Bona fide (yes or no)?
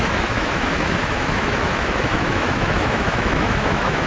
no